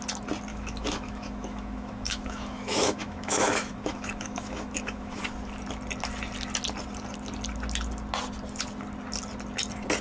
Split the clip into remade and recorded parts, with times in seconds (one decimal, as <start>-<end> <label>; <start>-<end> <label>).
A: 0.0-0.5 recorded; 0.5-5.2 remade; 5.2-10.0 recorded